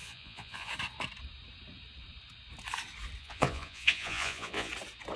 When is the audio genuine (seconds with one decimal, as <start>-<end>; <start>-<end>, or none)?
0.7-3.2; 4.7-5.2